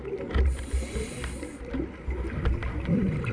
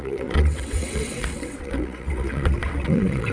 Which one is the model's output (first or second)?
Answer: second